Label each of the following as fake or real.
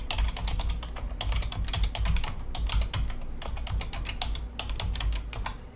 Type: real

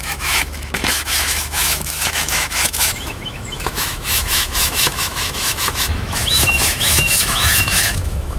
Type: fake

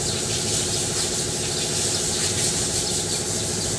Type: real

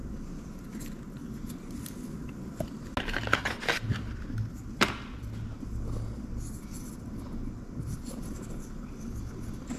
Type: real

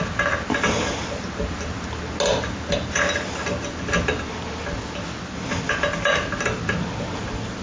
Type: real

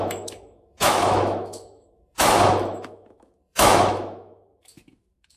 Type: fake